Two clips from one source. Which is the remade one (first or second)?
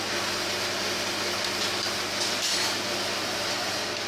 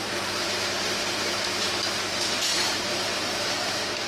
second